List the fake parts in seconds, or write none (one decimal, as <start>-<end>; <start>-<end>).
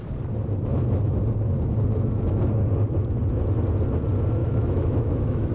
4.4-5.5